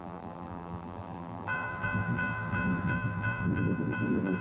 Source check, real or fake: fake